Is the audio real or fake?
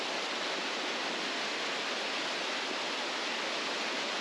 real